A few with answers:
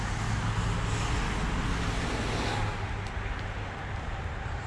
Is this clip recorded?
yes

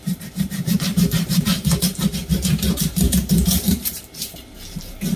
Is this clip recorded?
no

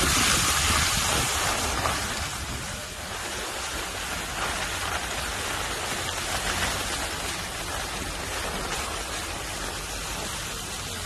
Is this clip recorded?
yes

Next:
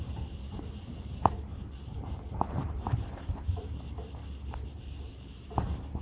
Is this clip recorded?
no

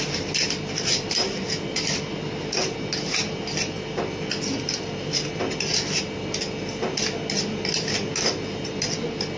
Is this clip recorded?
yes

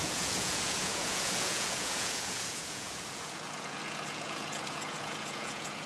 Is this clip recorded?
no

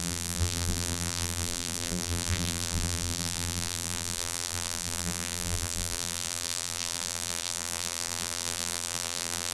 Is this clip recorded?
no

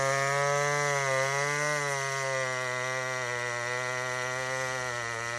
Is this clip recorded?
yes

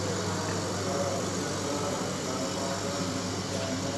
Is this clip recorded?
yes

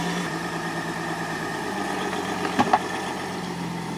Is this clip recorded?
no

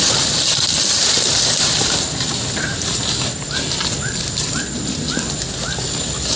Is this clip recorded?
yes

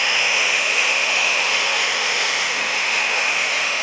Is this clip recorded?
no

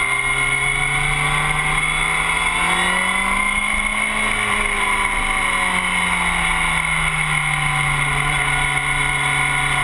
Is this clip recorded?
yes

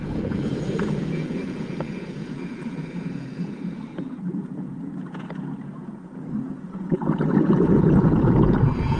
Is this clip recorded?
no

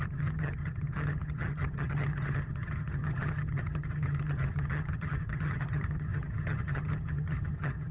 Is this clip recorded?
no